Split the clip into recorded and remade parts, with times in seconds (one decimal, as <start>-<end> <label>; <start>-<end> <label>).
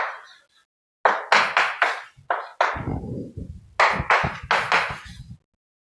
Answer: 0.0-6.0 recorded